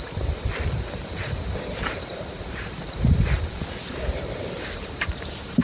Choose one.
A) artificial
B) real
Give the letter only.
A